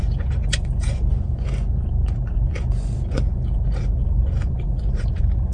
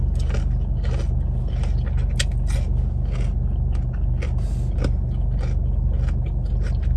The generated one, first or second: first